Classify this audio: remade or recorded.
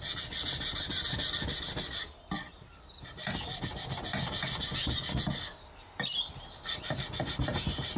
recorded